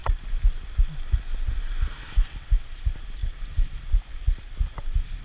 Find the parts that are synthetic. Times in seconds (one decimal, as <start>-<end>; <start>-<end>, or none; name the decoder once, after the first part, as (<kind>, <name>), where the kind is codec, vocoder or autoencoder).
none